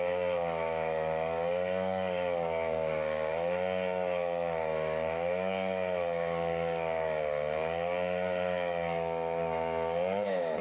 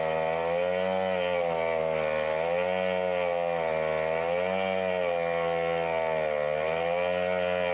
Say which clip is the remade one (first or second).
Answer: first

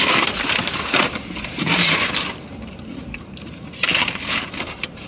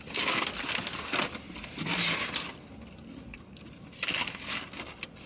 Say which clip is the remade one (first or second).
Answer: first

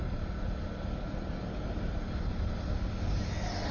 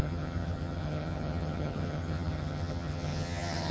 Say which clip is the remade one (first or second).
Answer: second